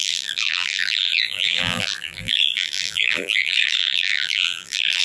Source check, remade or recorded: remade